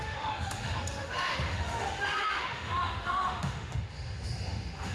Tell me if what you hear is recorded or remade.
remade